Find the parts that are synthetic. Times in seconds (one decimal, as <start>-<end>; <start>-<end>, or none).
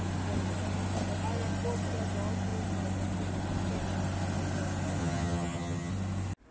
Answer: 5.0-5.9